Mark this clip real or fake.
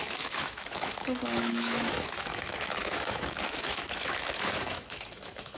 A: fake